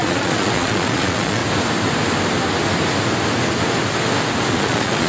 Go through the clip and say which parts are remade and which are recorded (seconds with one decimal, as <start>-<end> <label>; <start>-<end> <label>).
0.0-1.4 remade; 1.4-4.5 recorded; 4.5-5.1 remade